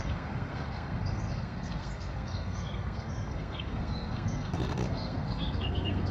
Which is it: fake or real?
fake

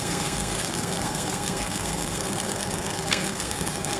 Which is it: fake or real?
fake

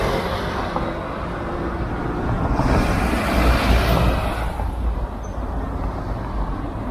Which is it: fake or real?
real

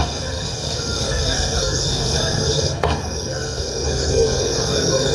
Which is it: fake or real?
fake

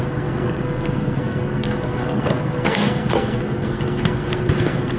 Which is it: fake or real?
fake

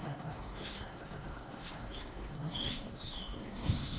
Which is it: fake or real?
fake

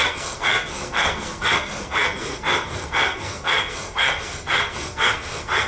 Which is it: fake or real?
fake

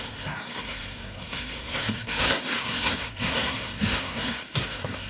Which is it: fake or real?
fake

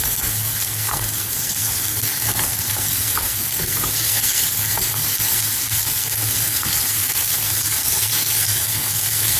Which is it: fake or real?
fake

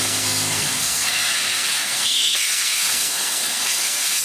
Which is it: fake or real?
fake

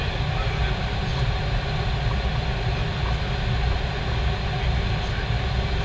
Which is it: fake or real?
real